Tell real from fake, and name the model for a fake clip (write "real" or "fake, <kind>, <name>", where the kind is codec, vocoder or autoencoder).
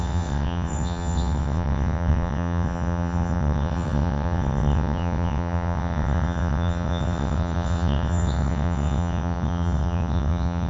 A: fake, vocoder, WaveNeXt